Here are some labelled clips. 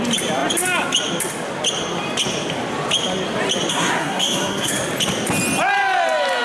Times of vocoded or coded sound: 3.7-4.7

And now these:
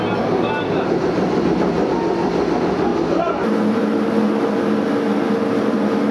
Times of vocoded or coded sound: none

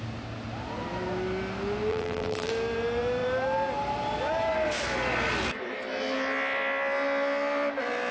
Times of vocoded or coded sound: 1.9-2.5

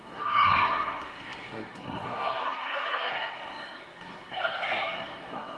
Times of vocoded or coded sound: 0.0-5.6

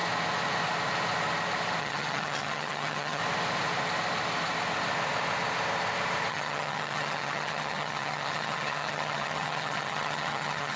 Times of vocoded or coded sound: 1.8-3.2; 6.3-10.8

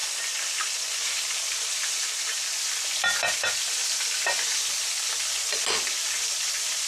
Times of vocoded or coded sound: none

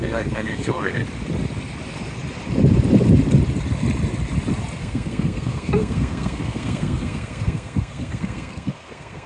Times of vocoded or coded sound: 0.0-1.0; 4.8-9.3